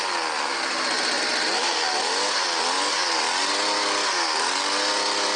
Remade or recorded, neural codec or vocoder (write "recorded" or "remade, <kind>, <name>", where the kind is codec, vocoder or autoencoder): recorded